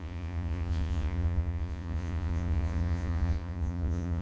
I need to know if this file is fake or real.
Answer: fake